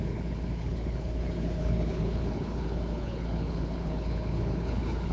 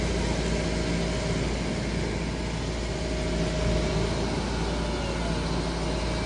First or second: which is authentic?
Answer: second